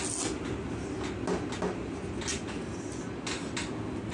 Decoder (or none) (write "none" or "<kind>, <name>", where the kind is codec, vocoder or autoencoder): none